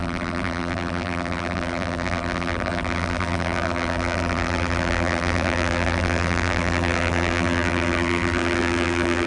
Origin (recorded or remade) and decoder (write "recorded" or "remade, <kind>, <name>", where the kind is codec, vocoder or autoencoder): remade, vocoder, BigVGAN v2